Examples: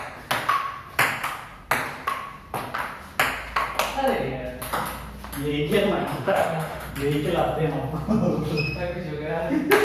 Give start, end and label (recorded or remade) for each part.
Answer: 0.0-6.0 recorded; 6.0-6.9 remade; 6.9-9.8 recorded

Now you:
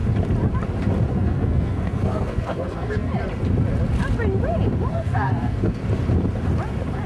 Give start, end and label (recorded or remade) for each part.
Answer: 0.0-1.1 recorded; 1.1-3.1 remade; 3.1-4.9 recorded; 4.9-5.8 remade; 5.8-7.1 recorded

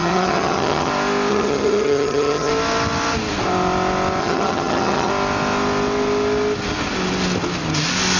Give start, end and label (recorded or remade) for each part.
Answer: 0.0-0.9 remade; 0.9-1.3 recorded; 1.3-2.5 remade; 2.5-4.2 recorded; 4.2-5.1 remade; 5.1-8.2 recorded

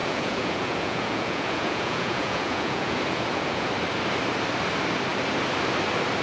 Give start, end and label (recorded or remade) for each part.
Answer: 0.0-3.7 remade; 3.7-6.2 recorded

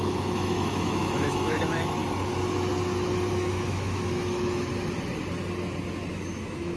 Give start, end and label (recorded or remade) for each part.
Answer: 0.0-2.0 remade; 2.0-3.3 recorded; 3.3-4.7 remade; 4.7-6.1 recorded; 6.1-6.8 remade

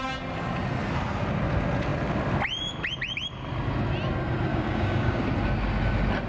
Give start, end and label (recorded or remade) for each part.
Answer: 0.0-4.5 recorded; 4.5-5.2 remade; 5.2-6.3 recorded